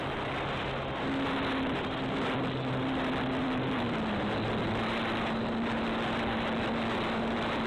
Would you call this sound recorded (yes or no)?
yes